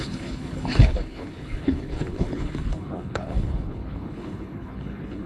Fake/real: fake